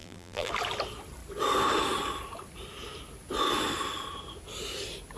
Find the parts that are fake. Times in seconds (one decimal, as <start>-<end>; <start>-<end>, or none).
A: 0.0-0.5